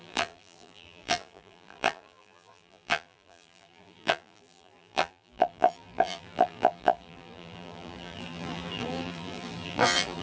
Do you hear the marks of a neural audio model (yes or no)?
yes